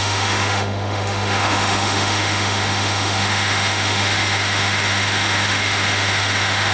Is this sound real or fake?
fake